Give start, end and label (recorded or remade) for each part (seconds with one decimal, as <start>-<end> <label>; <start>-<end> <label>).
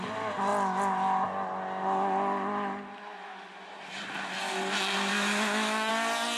0.0-5.1 recorded; 5.1-5.9 remade; 5.9-6.4 recorded